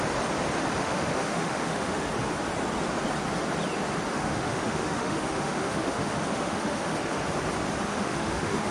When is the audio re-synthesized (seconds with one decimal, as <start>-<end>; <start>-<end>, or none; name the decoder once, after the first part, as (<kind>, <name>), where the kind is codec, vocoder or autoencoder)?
0.8-2.1 (autoencoder, DAC-VAE); 4.1-7.1; 7.9-8.7